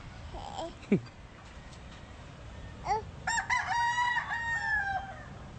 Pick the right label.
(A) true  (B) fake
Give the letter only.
A